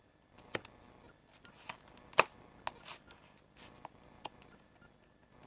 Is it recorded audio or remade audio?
recorded